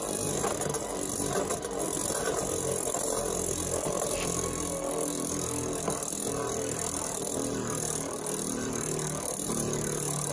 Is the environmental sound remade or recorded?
recorded